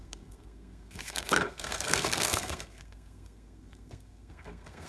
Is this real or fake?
fake